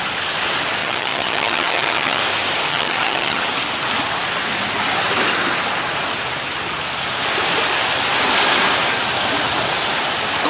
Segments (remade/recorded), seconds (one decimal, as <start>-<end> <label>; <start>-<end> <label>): 0.0-0.8 recorded; 0.8-2.2 remade; 2.2-2.7 recorded; 2.7-3.4 remade; 3.4-10.5 recorded